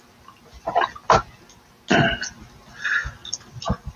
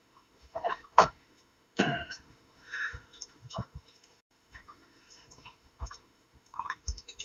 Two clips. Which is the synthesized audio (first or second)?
second